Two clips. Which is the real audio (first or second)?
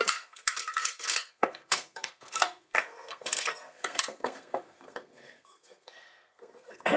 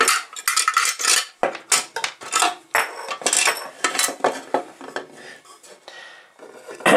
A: second